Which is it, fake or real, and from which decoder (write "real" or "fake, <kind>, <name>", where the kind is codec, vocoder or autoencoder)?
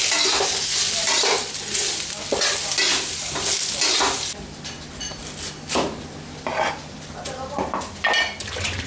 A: real